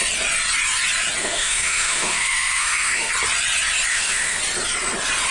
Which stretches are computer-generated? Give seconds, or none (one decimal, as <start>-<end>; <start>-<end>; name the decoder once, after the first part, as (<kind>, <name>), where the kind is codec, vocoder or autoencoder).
1.2-3.1 (autoencoder, DAC-VAE); 3.9-4.4